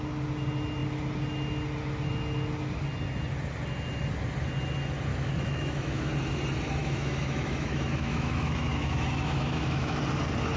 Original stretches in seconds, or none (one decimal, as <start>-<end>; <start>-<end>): 0.0-5.1; 6.1-6.8; 10.0-10.6